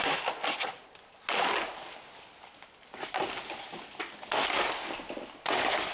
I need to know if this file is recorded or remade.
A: recorded